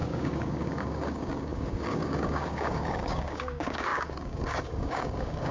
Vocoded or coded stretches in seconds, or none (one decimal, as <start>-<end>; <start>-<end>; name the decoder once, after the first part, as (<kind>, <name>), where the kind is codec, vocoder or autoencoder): 0.0-5.5 (codec, DAC)